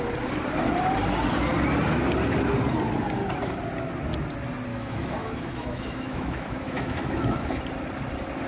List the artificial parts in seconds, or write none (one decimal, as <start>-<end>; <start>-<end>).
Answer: 4.7-7.6